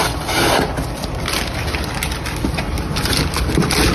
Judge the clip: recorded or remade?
recorded